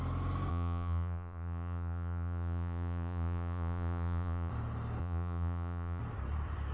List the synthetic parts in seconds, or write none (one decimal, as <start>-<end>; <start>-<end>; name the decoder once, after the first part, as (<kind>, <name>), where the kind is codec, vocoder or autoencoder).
0.5-4.5 (vocoder, Vocos); 5.0-6.0

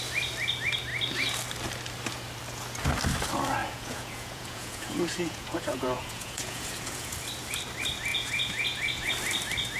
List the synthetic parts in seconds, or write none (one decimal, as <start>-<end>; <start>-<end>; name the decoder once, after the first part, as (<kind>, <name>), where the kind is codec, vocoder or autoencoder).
3.6-7.1 (vocoder, Vocos); 8.1-9.1

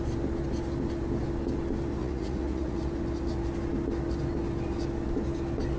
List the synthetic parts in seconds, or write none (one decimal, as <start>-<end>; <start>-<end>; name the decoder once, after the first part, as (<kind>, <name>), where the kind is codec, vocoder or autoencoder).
2.0-2.8 (vocoder, Vocos)

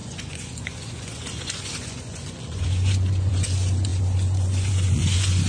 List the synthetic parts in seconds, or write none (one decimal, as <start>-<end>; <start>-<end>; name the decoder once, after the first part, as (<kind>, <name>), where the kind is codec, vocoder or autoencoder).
0.0-5.5 (vocoder, Vocos)